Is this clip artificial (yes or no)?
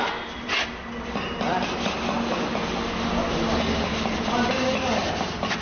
no